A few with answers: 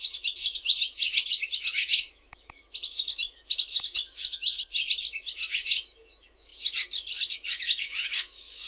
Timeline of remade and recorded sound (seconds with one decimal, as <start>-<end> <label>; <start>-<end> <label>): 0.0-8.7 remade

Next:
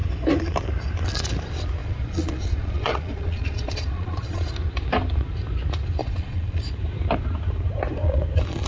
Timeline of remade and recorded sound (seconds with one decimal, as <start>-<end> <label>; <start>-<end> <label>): 0.0-1.8 recorded; 1.8-4.4 remade; 4.4-6.0 recorded; 6.0-6.6 remade; 6.6-8.7 recorded

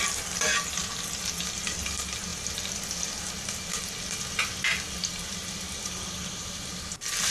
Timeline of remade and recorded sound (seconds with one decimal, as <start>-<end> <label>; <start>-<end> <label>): 0.0-7.3 recorded